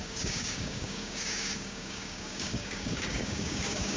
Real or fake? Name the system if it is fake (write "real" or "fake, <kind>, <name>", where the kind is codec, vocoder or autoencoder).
fake, codec, DAC